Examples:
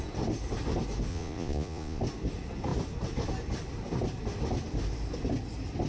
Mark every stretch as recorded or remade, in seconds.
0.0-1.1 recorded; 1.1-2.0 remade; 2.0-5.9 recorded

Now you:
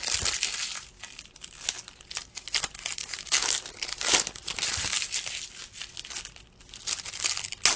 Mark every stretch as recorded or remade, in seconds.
0.0-3.0 recorded; 3.0-3.5 remade; 3.5-7.8 recorded

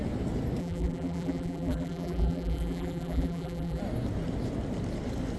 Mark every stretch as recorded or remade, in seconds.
0.0-0.6 recorded; 0.6-3.8 remade; 3.8-5.4 recorded

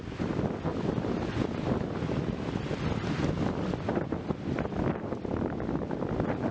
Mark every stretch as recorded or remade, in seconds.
0.0-6.5 recorded

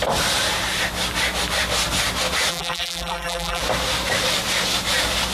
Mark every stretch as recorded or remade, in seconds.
0.0-2.5 recorded; 2.5-3.6 remade; 3.6-5.3 recorded

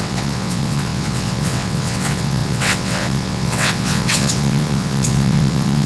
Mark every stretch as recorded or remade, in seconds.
0.0-5.9 remade

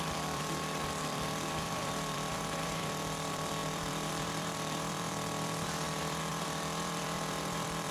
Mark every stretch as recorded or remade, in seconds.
0.0-7.9 remade